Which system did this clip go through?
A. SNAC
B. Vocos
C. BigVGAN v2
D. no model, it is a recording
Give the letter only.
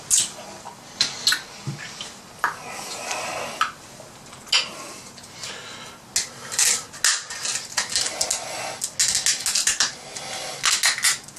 D